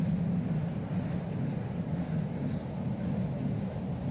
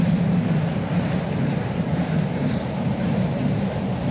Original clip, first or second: first